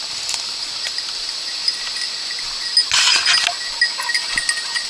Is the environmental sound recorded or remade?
recorded